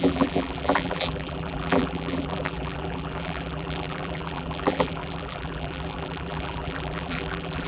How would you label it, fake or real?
fake